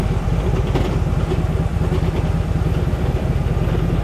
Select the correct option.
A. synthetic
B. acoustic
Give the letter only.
B